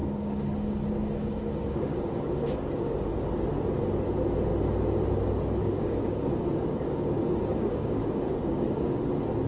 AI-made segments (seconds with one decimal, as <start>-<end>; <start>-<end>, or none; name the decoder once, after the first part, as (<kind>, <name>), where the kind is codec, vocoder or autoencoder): 0.0-3.1 (codec, DAC); 5.6-9.1